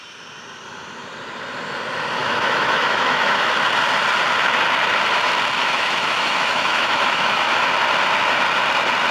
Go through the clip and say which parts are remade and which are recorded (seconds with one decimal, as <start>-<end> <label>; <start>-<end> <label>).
0.0-2.2 recorded; 2.2-3.5 remade; 3.5-5.6 recorded; 5.6-7.7 remade; 7.7-9.1 recorded